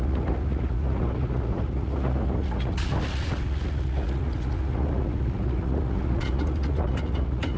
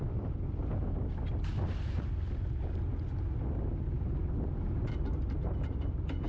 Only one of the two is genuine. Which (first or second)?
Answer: second